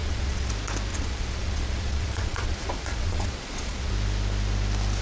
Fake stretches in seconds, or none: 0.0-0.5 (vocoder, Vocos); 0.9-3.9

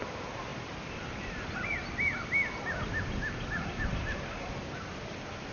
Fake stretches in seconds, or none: 0.5-3.8 (vocoder, BigVGAN v2)

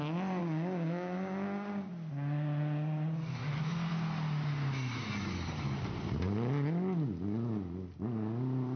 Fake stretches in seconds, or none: 0.4-1.9 (codec, DAC)

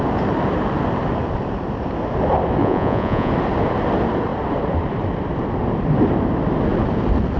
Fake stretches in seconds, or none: 2.6-3.3 (vocoder, Vocos)

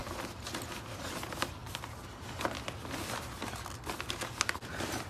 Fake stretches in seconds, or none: none

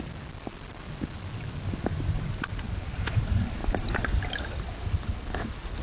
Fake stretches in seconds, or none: none